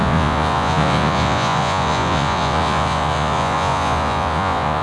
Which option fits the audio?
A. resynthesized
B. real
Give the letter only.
A